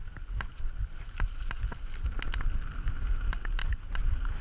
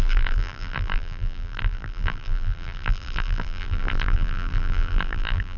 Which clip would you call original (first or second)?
first